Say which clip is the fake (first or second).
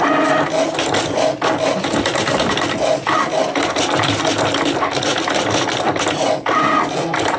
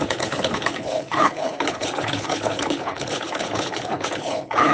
second